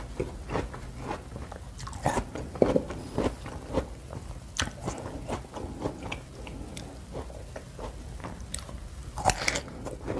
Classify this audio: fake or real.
real